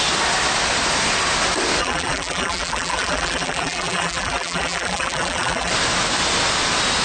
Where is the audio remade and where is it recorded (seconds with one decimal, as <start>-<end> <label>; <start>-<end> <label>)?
0.0-1.8 recorded; 1.8-5.7 remade; 5.7-7.0 recorded